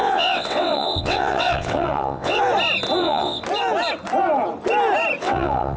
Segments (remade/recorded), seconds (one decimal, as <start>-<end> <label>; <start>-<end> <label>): 0.0-2.4 remade; 2.4-3.0 recorded; 3.0-3.4 remade; 3.4-5.2 recorded; 5.2-5.8 remade